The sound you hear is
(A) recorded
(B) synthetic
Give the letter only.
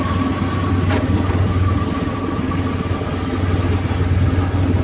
A